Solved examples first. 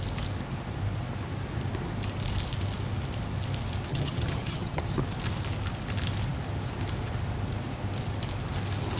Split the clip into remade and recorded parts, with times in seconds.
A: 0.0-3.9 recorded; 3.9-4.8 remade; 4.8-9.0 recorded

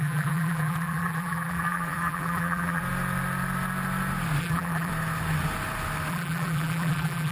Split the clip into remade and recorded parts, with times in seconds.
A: 0.0-2.8 remade; 2.8-4.4 recorded; 4.4-4.9 remade; 4.9-6.1 recorded; 6.1-7.3 remade

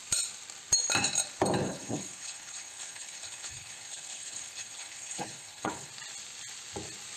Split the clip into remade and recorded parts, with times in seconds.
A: 0.0-1.6 recorded; 1.6-5.9 remade; 5.9-7.2 recorded

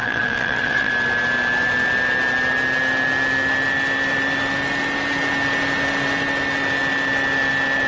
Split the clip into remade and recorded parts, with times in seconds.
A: 0.0-0.9 remade; 0.9-7.9 recorded